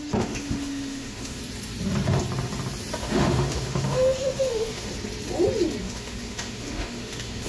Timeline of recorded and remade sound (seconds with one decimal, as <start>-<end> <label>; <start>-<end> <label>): 0.0-1.4 remade; 1.4-3.0 recorded; 3.0-4.9 remade; 4.9-5.8 recorded; 5.8-7.5 remade